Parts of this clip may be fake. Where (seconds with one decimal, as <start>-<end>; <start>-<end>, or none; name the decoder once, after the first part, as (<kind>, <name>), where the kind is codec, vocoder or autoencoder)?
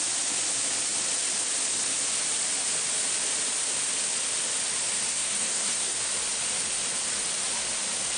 5.1-6.0 (codec, SNAC)